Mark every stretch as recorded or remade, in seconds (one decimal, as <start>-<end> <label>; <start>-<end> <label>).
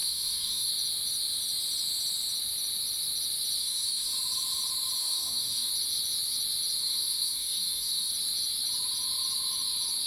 0.0-0.7 remade; 0.7-3.6 recorded; 3.6-4.1 remade; 4.1-5.0 recorded; 5.0-5.7 remade; 5.7-6.8 recorded; 6.8-8.1 remade; 8.1-10.1 recorded